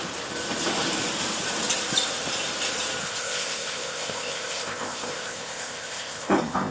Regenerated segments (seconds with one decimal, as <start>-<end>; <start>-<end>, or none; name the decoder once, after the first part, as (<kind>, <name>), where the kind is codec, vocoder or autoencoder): 3.0-6.7 (codec, ZipCodec)